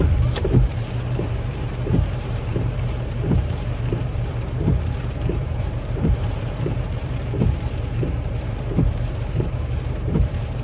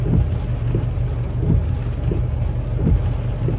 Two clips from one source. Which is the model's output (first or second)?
first